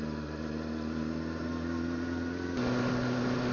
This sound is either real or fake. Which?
real